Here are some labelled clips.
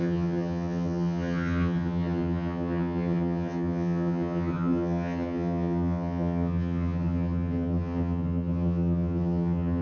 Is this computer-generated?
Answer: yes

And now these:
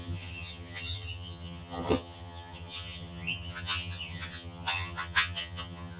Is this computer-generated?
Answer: yes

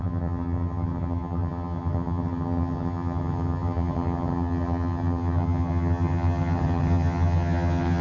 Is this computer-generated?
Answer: yes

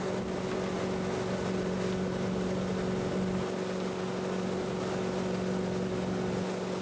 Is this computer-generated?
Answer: no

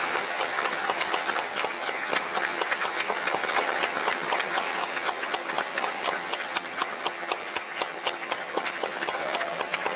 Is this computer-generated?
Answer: yes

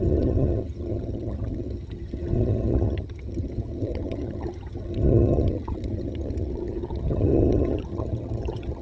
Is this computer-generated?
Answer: yes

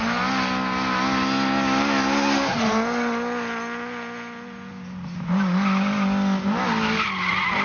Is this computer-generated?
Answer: no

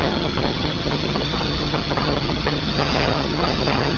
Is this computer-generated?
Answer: yes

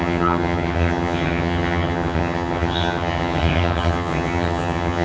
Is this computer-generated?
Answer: yes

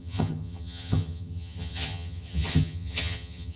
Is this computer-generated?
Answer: yes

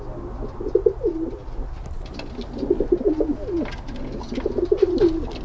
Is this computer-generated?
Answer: no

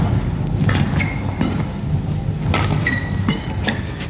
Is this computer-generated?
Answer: no